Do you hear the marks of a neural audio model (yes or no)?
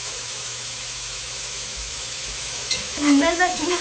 yes